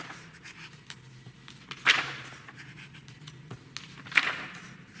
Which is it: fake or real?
real